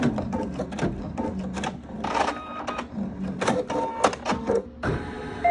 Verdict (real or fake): real